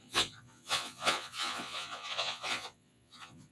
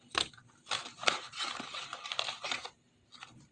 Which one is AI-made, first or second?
first